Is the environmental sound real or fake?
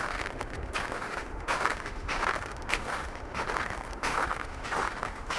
fake